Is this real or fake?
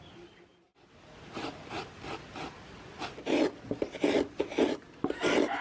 real